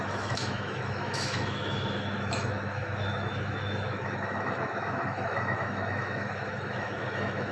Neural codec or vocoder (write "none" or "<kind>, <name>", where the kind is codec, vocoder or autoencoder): autoencoder, DAC-VAE